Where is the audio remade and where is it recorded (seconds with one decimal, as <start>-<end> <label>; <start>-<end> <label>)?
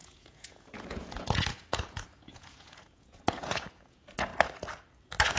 0.0-4.3 remade; 4.3-5.4 recorded